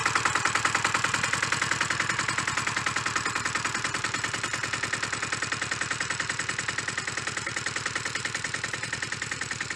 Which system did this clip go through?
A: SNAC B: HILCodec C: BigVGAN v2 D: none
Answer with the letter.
D